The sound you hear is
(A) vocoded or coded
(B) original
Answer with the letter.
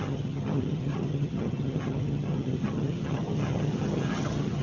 A